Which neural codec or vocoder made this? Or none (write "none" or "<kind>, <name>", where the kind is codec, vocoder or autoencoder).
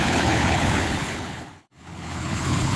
codec, HILCodec